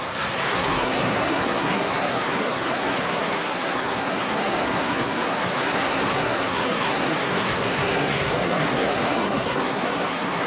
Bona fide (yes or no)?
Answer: no